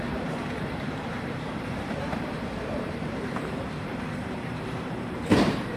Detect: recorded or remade remade